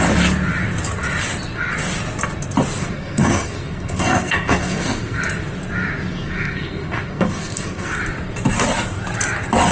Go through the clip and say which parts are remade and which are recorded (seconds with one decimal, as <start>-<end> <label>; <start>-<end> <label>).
0.0-2.8 recorded; 2.8-5.2 remade; 5.2-6.1 recorded; 6.1-8.0 remade; 8.0-9.7 recorded

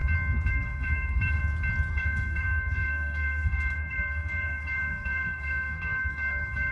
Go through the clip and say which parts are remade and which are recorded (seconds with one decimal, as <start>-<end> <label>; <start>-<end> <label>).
0.0-0.5 recorded; 0.5-1.4 remade; 1.4-1.9 recorded; 1.9-6.7 remade

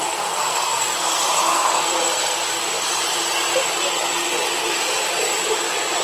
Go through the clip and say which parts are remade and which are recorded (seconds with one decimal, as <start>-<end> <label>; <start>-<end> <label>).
0.0-2.4 remade; 2.4-6.0 recorded